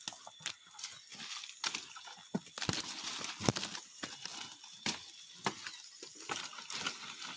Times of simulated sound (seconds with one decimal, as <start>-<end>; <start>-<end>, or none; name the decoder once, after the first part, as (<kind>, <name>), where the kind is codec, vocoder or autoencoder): none